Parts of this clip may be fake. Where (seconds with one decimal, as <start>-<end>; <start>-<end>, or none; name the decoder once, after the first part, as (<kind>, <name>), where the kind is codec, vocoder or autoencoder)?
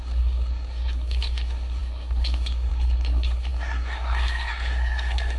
0.0-5.4 (codec, SNAC)